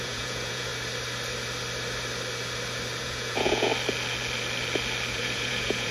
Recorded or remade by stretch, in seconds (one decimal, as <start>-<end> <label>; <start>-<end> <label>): 0.0-0.7 remade; 0.7-3.0 recorded; 3.0-3.7 remade; 3.7-5.1 recorded; 5.1-5.9 remade